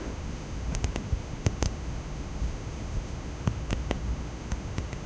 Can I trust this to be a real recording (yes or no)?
no